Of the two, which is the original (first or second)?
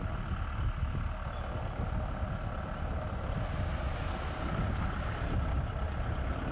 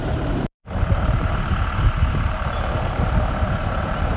first